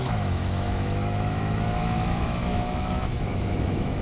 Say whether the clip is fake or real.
fake